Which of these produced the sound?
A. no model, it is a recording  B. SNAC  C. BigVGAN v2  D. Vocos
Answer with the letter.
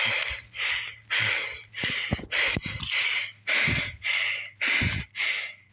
A